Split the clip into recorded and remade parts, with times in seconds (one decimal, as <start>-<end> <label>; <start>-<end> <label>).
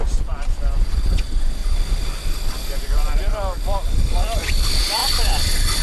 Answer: 0.0-1.6 recorded; 1.6-2.2 remade; 2.2-5.0 recorded; 5.0-5.8 remade